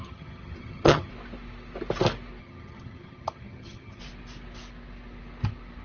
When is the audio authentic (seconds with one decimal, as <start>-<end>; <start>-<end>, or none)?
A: 1.1-2.4; 4.0-5.8

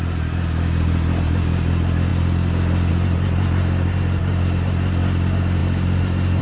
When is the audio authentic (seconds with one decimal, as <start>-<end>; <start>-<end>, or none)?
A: 0.0-6.4

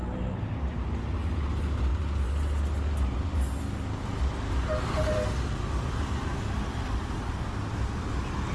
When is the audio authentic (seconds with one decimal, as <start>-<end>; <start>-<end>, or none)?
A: 0.0-8.5

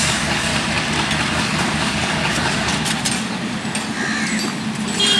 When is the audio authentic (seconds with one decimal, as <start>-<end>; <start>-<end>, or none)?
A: 0.5-1.3; 2.7-5.2

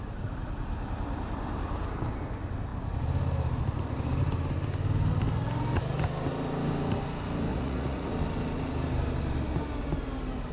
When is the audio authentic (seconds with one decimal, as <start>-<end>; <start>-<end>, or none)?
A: 0.0-7.5; 8.1-10.5